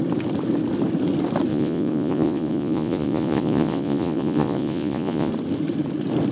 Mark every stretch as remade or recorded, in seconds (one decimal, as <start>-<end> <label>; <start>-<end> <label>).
0.0-1.5 recorded; 1.5-5.3 remade; 5.3-6.3 recorded